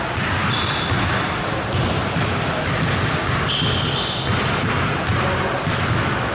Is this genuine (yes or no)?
yes